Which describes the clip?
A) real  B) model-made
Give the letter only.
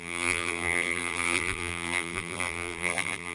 B